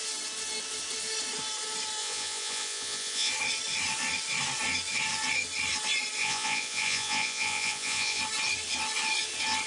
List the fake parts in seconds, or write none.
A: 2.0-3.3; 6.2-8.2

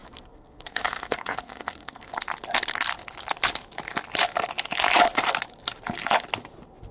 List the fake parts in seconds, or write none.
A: 0.0-2.1

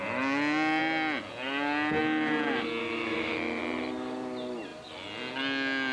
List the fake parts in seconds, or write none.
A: 2.8-3.6